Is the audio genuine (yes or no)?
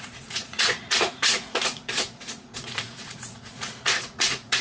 no